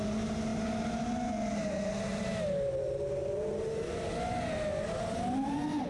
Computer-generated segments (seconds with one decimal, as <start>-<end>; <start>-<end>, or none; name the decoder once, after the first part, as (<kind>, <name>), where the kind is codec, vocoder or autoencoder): none